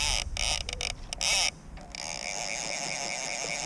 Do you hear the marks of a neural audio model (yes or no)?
no